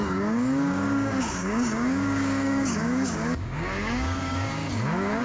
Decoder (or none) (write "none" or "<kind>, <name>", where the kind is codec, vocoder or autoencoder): codec, DAC